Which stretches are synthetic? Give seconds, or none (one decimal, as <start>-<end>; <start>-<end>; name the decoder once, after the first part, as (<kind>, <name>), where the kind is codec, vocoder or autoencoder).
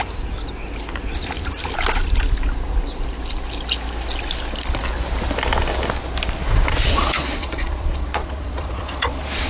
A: 6.4-9.1 (vocoder, Vocos)